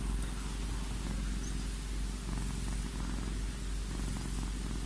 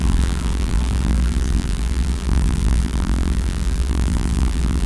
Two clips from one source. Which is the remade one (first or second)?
second